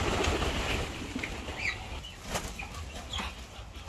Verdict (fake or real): real